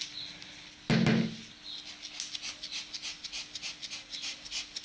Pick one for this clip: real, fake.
real